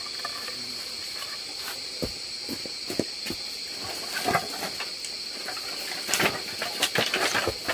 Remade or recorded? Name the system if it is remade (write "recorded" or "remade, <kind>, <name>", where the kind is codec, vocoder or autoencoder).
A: recorded